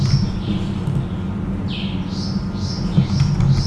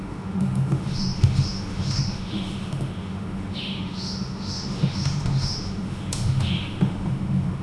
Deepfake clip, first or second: second